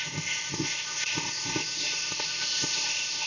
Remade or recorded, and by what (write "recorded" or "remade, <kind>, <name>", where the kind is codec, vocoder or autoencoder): remade, codec, ZipCodec